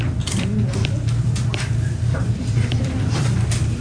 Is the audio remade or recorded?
remade